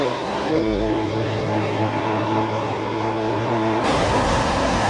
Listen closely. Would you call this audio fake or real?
fake